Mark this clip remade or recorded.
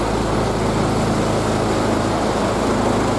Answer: recorded